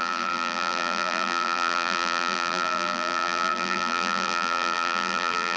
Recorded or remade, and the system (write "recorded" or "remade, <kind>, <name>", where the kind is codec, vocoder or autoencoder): remade, vocoder, BigVGAN v2